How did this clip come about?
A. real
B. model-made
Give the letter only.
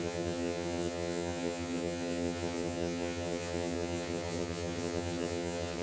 B